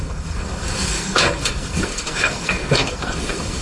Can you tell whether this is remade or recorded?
remade